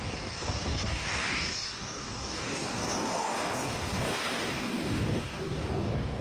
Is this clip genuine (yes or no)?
no